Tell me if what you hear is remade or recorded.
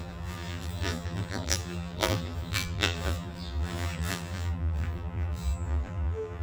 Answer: remade